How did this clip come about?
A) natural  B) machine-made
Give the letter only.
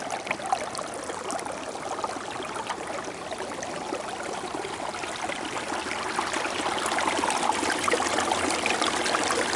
A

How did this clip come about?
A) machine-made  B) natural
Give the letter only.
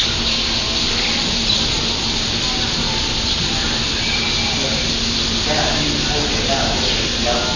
B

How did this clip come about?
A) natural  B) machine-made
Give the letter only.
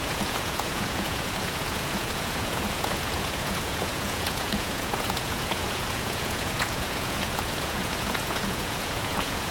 B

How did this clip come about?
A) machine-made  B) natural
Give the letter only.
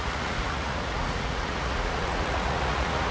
A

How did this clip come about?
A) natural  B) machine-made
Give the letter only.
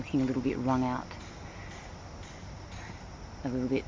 A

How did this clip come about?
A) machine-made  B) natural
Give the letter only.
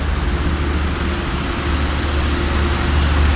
B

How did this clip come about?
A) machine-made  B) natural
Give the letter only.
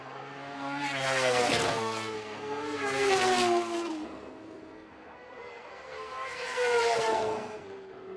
A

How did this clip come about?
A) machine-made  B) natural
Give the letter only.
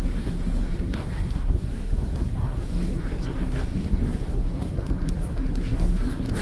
A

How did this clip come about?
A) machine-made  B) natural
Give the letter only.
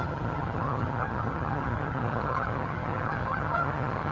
A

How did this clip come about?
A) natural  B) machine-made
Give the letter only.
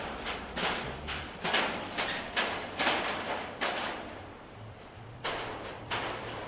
B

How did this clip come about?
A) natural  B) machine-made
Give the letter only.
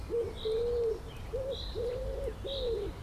B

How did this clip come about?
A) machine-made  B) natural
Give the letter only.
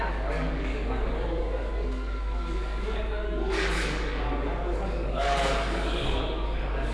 A